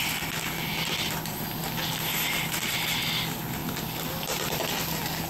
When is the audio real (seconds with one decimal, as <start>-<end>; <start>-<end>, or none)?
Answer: 0.0-1.6; 2.8-3.6; 4.7-5.3